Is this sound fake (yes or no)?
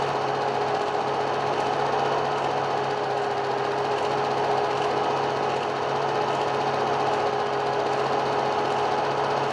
no